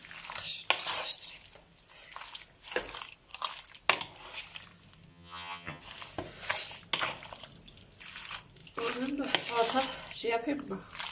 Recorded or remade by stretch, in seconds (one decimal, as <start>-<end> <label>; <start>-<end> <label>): 0.0-5.1 recorded; 5.1-5.8 remade; 5.8-11.1 recorded